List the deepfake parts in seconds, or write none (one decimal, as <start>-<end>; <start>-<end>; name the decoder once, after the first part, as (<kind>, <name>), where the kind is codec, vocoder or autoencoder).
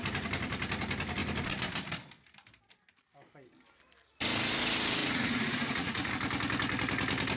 5.0-6.1 (vocoder, Vocos)